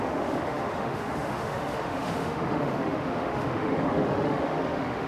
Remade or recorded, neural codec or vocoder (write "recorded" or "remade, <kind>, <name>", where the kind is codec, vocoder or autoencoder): remade, autoencoder, DAC-VAE